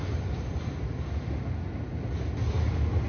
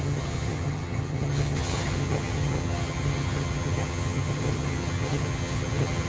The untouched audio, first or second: first